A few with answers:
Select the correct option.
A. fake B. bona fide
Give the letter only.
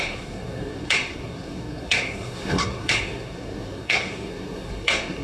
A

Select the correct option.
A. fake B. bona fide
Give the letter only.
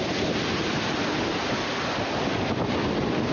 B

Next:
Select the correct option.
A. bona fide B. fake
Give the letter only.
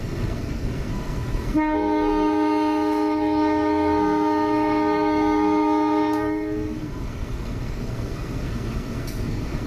B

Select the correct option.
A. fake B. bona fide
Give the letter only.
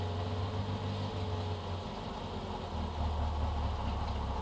B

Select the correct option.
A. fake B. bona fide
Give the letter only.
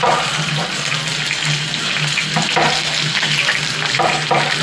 B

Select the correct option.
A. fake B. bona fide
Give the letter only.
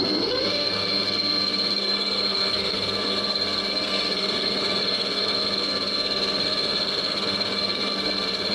A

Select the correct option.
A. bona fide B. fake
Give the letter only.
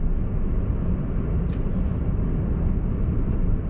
A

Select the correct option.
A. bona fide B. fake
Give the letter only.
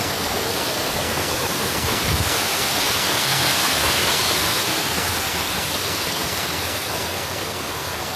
B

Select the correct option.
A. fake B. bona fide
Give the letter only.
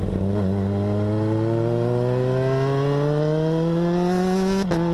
B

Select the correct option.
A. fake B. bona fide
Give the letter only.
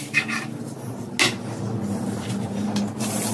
B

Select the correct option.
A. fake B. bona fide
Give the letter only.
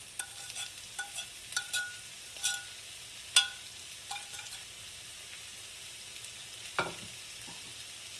B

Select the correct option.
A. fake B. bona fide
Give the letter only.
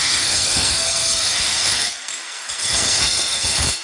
A